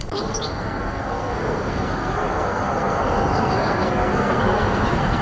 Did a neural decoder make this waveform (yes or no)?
yes